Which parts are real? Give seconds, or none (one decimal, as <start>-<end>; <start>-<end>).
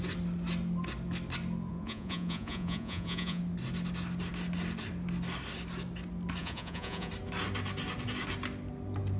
0.0-1.7; 3.4-6.4; 7.1-9.2